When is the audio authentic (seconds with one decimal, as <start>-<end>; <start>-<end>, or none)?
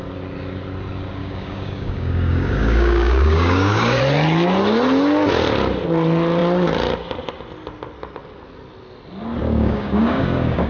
0.0-1.2; 4.0-9.4